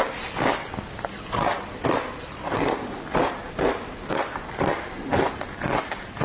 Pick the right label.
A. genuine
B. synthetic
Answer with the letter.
A